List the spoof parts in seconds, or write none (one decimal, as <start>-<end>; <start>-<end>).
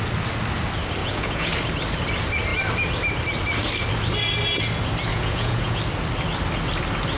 1.0-1.5; 5.1-5.8